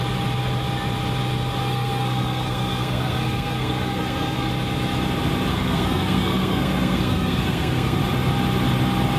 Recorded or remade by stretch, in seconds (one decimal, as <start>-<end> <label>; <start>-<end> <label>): 0.0-1.6 recorded; 1.6-4.5 remade; 4.5-5.5 recorded; 5.5-8.0 remade; 8.0-9.2 recorded